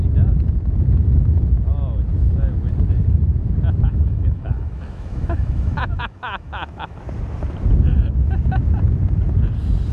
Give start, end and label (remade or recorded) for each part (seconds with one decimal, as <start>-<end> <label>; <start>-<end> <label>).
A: 0.0-3.9 recorded; 3.9-7.0 remade; 7.0-9.9 recorded